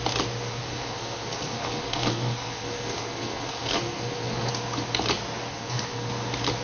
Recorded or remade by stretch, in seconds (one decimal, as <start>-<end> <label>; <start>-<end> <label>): 0.0-0.5 recorded; 0.5-4.5 remade; 4.5-5.5 recorded; 5.5-6.1 remade; 6.1-6.6 recorded